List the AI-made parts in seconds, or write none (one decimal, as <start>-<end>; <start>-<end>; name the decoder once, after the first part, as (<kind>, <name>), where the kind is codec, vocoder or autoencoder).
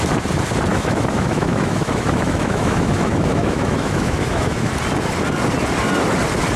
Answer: 0.7-4.7 (autoencoder, DAC-VAE)